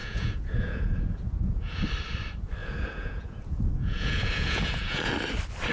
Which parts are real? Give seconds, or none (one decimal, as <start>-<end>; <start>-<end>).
1.8-2.6; 5.1-5.7